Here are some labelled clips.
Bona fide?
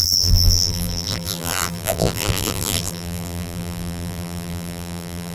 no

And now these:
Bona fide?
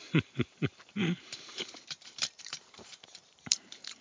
no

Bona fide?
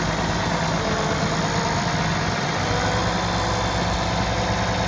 yes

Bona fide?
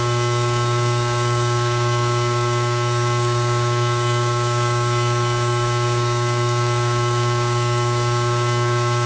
no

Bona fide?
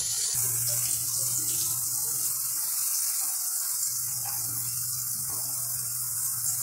yes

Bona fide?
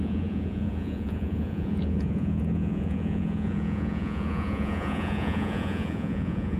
no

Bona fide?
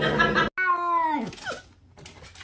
yes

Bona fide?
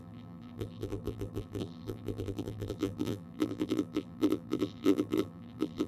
no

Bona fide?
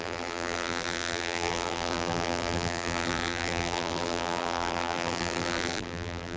no